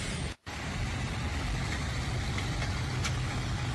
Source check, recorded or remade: recorded